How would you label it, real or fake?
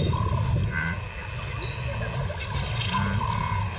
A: real